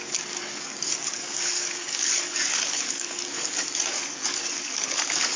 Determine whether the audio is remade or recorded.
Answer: remade